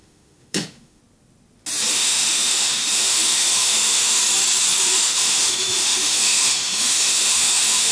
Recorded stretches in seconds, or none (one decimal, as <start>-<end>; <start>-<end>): 1.0-1.9; 4.2-4.8